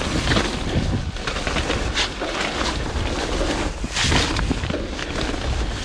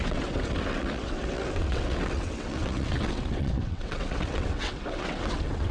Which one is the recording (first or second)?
first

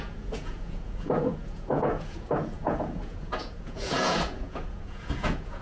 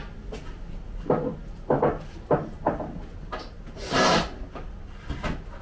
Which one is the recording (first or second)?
second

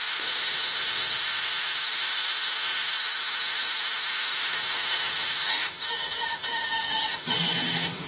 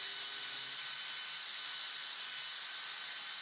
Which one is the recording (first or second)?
second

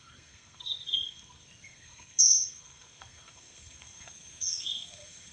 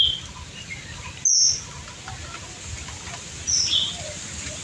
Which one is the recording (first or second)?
second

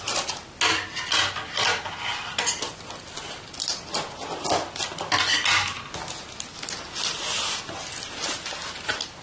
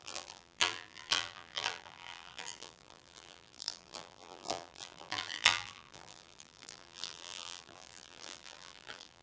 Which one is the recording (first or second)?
first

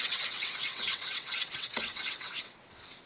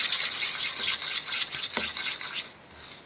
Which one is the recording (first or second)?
second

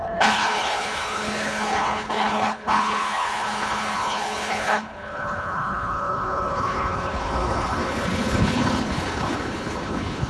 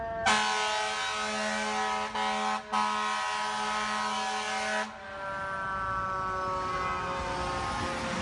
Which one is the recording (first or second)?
second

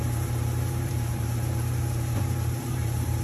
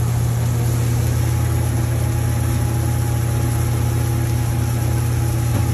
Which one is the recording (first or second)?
second